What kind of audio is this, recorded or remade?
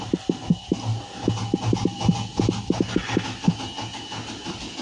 recorded